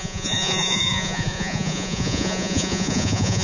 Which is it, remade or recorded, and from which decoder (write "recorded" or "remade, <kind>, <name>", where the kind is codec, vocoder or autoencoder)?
remade, vocoder, Vocos